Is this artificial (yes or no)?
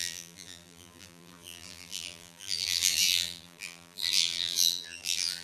yes